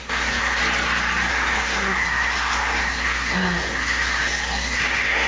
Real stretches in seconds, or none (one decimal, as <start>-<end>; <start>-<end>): 0.6-1.3